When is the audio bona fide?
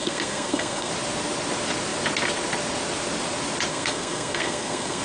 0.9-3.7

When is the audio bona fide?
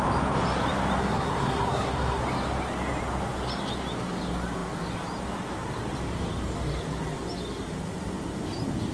0.0-1.0; 2.2-8.9